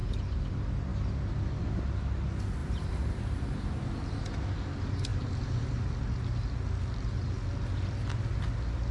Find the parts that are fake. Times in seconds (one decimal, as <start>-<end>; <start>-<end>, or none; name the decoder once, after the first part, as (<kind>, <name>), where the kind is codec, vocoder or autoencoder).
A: 0.0-0.5 (vocoder, BigVGAN v2); 2.6-3.7; 5.1-5.9